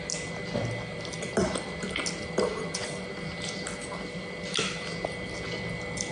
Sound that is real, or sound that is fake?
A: real